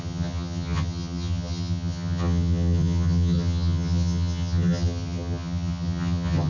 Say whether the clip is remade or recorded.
remade